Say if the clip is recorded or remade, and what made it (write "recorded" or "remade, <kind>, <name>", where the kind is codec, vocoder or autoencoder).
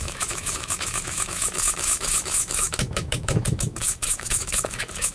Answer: remade, autoencoder, DAC-VAE